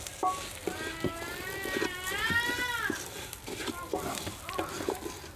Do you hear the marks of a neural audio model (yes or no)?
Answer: no